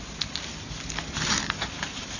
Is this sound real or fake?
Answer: real